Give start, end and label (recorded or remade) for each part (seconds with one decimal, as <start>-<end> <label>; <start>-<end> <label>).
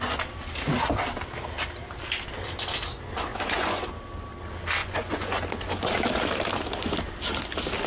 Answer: 0.0-3.3 recorded; 3.3-3.8 remade; 3.8-4.8 recorded; 4.8-5.4 remade; 5.4-7.9 recorded